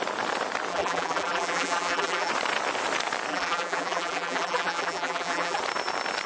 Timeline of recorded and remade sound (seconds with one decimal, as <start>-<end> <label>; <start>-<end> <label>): 0.0-0.7 recorded; 0.7-2.3 remade; 2.3-3.3 recorded; 3.3-5.6 remade; 5.6-6.3 recorded

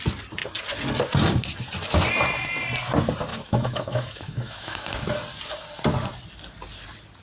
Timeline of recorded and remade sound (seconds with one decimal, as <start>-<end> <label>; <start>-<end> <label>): 0.0-3.3 recorded; 3.3-4.9 remade; 4.9-7.2 recorded

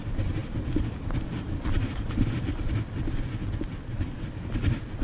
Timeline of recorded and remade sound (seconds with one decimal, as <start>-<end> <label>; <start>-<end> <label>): 0.0-5.0 recorded